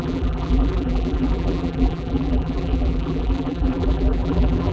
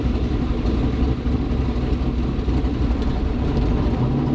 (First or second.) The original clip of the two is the second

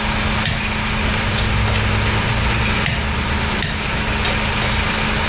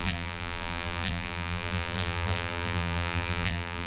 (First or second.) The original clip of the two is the first